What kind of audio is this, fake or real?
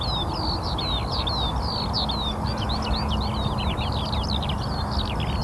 real